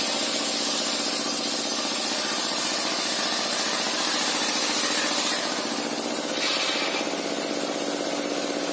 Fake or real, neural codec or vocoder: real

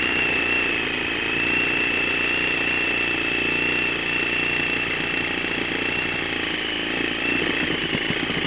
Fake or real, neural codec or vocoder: real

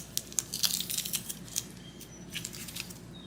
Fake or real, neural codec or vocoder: real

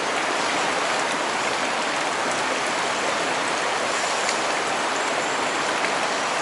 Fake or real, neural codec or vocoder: real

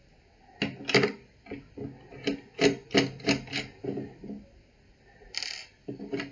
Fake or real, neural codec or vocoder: real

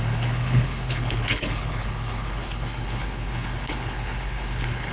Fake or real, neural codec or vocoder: fake, codec, HILCodec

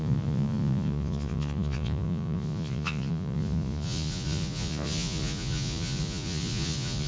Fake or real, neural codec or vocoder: fake, vocoder, Vocos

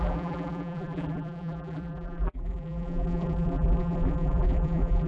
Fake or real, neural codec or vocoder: fake, vocoder, BigVGAN v2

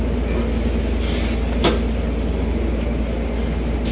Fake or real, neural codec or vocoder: real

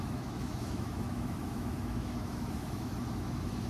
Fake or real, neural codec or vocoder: fake, autoencoder, DAC-VAE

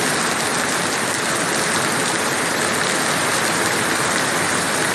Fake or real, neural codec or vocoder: fake, vocoder, BigVGAN v2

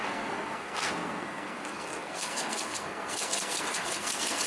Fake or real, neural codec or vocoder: fake, codec, SNAC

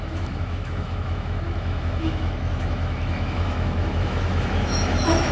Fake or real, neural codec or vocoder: fake, autoencoder, DAC-VAE